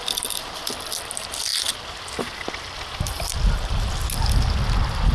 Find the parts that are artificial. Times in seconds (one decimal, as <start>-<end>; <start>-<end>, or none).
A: none